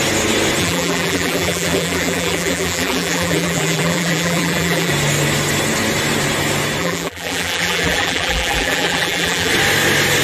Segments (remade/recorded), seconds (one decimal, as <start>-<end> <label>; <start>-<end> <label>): 0.0-0.6 recorded; 0.6-4.9 remade; 4.9-6.8 recorded; 6.8-9.5 remade; 9.5-10.2 recorded